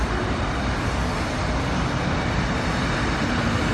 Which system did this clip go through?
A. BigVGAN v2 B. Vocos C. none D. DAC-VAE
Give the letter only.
C